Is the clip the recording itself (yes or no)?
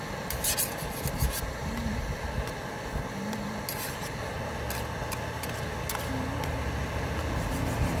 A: yes